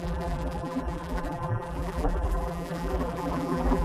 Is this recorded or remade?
remade